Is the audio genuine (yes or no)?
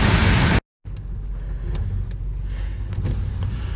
yes